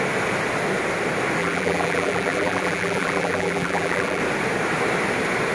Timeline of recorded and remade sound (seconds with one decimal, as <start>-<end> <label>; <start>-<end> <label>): 0.0-1.4 recorded; 1.4-4.2 remade; 4.2-5.5 recorded

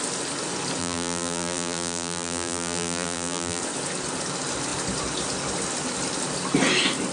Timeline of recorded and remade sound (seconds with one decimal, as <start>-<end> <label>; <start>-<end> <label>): 0.0-0.8 recorded; 0.8-3.6 remade; 3.6-7.1 recorded